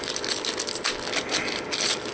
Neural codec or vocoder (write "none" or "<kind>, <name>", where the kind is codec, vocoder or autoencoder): none